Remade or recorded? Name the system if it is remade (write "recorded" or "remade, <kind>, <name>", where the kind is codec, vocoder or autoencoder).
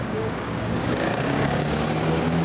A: remade, codec, DAC